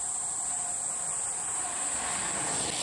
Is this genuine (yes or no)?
yes